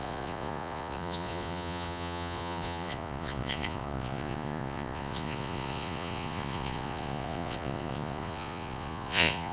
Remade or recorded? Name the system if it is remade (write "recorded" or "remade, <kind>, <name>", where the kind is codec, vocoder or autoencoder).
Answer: remade, vocoder, Vocos